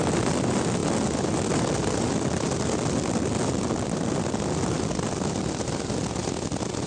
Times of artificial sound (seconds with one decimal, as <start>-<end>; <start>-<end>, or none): 0.8-4.9